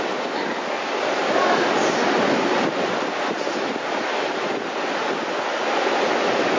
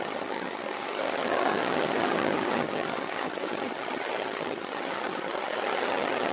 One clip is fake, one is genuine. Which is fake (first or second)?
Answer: second